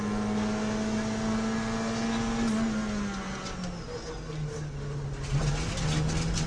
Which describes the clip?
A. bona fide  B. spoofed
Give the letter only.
A